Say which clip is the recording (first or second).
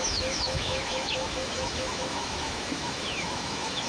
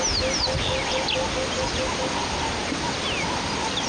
second